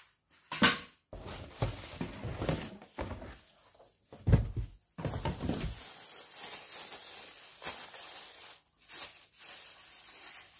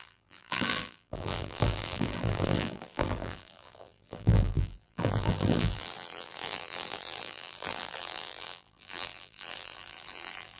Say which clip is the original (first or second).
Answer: first